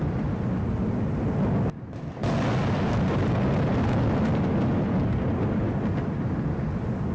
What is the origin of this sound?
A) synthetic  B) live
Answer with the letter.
B